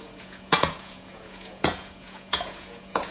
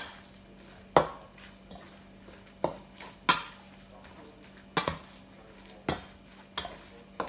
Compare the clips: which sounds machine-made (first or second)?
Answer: first